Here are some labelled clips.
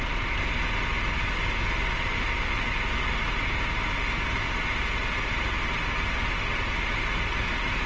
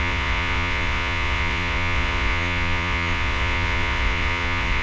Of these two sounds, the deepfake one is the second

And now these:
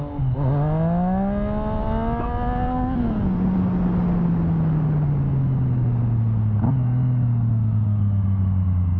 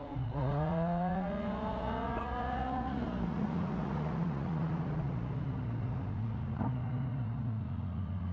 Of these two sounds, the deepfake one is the second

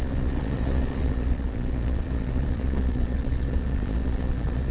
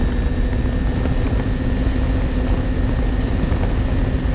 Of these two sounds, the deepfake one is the first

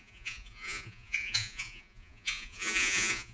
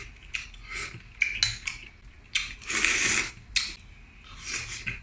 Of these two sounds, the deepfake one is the first